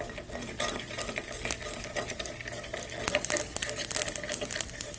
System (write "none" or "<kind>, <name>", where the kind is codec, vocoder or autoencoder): none